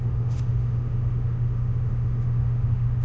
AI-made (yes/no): yes